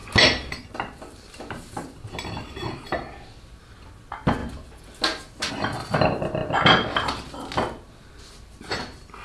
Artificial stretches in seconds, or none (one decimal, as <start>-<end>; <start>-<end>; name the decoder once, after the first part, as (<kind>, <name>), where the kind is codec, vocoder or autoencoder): none